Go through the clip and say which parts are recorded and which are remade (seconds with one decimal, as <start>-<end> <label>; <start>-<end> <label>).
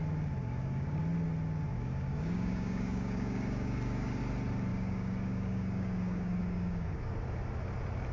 0.0-0.4 recorded; 0.4-1.0 remade; 1.0-1.7 recorded; 1.7-4.2 remade; 4.2-4.7 recorded; 4.7-7.1 remade; 7.1-8.1 recorded